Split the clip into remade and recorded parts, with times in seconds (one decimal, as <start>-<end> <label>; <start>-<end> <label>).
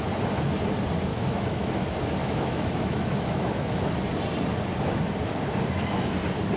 0.0-1.1 recorded; 1.1-1.8 remade; 1.8-2.2 recorded; 2.2-3.9 remade; 3.9-6.6 recorded